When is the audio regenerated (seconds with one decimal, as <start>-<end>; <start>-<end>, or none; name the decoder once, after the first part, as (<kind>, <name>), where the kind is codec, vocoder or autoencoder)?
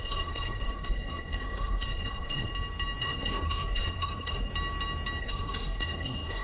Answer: 0.0-2.5 (codec, SNAC); 3.0-4.5; 5.2-6.4